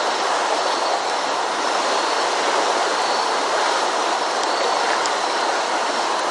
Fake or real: real